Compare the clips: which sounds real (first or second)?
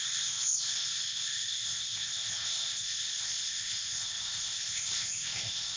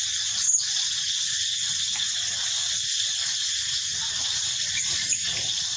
second